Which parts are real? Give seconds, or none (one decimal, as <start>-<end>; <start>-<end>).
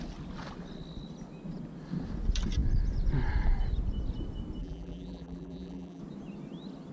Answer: 0.0-4.6; 6.0-6.9